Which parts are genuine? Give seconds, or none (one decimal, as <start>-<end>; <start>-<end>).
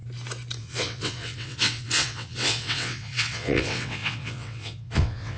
0.0-0.6